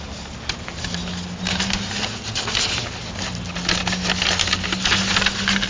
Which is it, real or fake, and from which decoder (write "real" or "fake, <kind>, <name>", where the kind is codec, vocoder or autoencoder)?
real